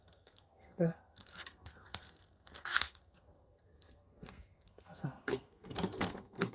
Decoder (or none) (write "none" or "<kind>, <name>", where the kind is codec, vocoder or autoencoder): codec, SNAC